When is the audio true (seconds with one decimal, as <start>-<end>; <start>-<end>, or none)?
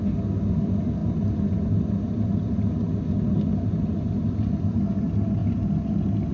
0.0-6.3